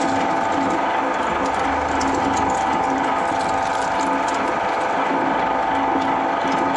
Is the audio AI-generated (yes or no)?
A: no